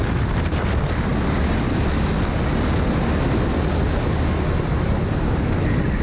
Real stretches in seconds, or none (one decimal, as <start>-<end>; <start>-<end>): 1.1-4.7